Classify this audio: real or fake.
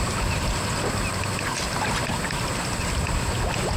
real